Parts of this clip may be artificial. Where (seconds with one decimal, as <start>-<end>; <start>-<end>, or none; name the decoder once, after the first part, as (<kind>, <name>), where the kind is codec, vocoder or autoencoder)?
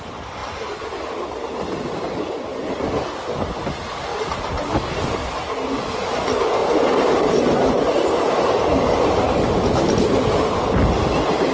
4.1-5.9 (vocoder, BigVGAN v2); 6.6-9.1